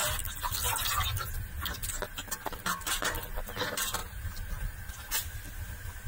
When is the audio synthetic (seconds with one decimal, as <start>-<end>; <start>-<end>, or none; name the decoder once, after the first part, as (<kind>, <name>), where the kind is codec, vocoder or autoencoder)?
4.0-4.9 (vocoder, BigVGAN v2)